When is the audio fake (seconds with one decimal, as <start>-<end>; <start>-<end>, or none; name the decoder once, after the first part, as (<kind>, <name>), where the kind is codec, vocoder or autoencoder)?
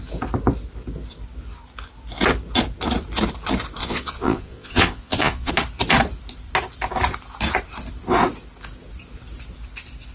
3.8-5.5 (vocoder, Vocos)